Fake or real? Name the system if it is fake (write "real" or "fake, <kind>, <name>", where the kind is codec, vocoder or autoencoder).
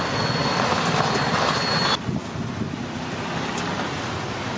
real